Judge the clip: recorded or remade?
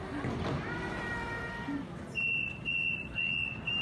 recorded